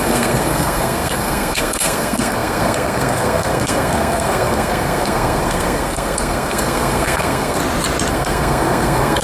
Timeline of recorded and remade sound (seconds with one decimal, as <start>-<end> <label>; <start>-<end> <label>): 0.0-7.6 remade; 7.6-8.1 recorded; 8.1-9.2 remade